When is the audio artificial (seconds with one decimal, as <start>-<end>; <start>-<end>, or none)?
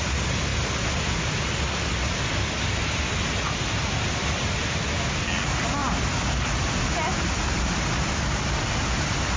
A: 5.8-9.4